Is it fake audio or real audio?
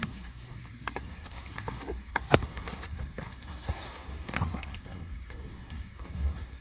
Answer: fake